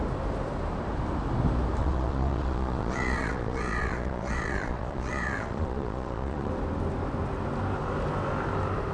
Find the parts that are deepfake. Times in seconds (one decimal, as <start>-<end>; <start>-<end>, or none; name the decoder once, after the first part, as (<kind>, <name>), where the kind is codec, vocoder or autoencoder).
1.8-6.5 (vocoder, Vocos)